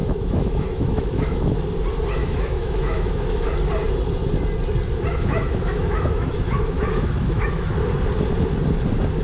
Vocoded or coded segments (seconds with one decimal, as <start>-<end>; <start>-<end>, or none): 0.0-1.6; 2.2-3.5; 5.1-7.7